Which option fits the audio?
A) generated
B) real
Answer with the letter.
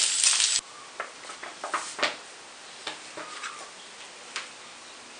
B